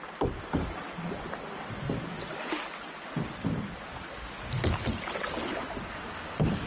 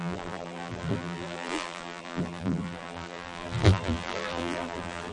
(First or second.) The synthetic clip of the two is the second